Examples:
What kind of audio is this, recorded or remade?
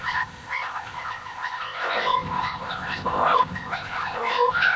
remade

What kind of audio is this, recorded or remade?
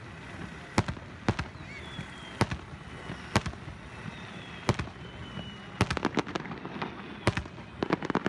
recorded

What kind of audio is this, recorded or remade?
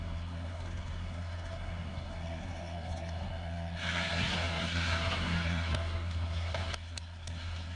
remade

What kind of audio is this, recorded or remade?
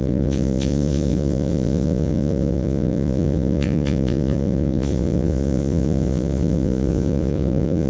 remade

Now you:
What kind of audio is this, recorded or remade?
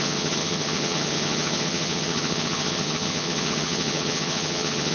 remade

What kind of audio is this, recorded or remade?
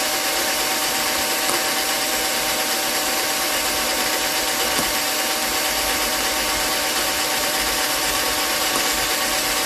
remade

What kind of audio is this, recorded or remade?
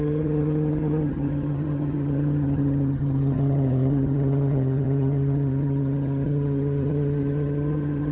remade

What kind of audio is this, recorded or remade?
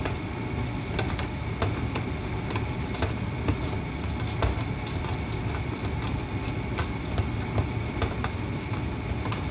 recorded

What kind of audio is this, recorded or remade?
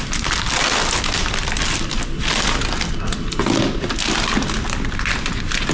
recorded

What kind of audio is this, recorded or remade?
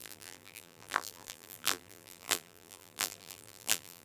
remade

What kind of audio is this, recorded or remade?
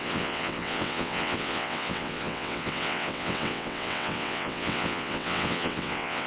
remade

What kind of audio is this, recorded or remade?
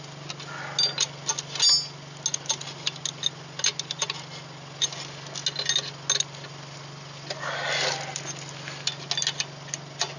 recorded